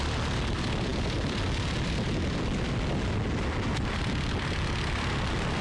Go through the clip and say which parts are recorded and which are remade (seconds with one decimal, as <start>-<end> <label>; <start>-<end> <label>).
0.0-5.6 recorded